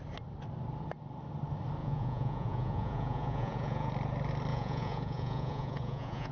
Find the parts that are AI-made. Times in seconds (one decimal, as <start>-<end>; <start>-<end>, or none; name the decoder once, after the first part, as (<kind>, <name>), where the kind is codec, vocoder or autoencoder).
1.8-3.9 (vocoder, Vocos); 4.5-6.3